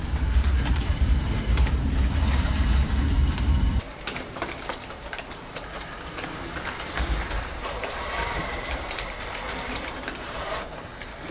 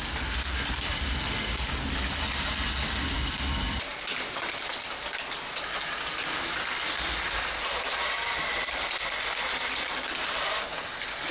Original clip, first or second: second